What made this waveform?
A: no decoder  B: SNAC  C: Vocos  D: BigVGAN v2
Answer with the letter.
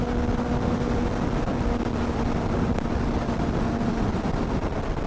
A